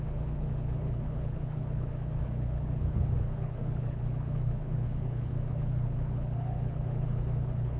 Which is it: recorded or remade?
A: remade